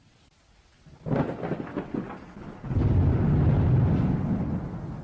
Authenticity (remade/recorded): recorded